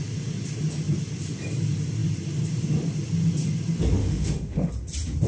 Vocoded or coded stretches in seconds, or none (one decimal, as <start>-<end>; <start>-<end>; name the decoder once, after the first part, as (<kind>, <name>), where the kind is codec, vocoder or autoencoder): 4.0-4.7 (autoencoder, DAC-VAE)